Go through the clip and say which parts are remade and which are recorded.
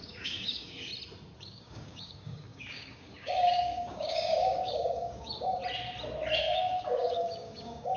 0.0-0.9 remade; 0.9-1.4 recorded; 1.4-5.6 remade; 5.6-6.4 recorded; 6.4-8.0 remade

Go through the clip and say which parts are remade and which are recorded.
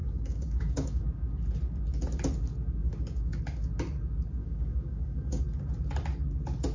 0.0-1.0 remade; 1.0-2.8 recorded; 2.8-3.4 remade; 3.4-4.4 recorded; 4.4-5.4 remade; 5.4-6.7 recorded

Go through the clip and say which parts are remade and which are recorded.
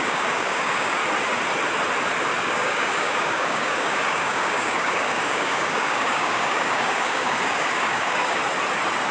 0.0-1.0 remade; 1.0-2.4 recorded; 2.4-8.4 remade; 8.4-9.1 recorded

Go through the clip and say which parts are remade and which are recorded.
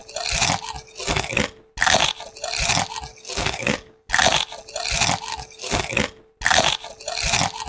0.0-3.1 recorded; 3.1-4.1 remade; 4.1-5.3 recorded; 5.3-5.8 remade; 5.8-7.7 recorded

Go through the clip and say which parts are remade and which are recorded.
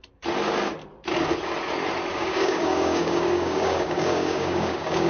0.0-2.1 recorded; 2.1-5.1 remade